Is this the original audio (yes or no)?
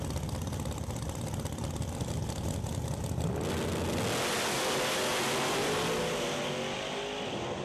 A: yes